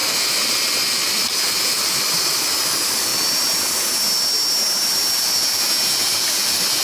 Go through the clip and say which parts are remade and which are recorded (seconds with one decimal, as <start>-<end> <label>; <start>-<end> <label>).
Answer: 0.0-6.8 recorded